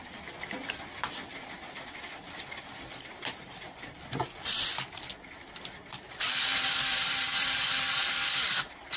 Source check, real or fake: fake